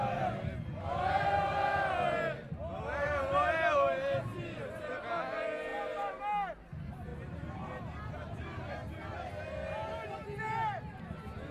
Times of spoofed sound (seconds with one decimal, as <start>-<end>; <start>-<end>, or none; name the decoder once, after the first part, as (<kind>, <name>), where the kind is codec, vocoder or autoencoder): 2.9-4.9 (vocoder, BigVGAN v2); 7.1-9.3